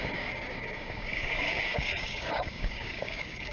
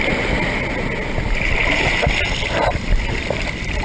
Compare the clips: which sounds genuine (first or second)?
second